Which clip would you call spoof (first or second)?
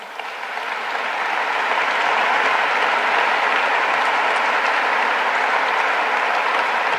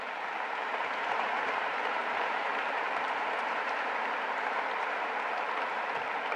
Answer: second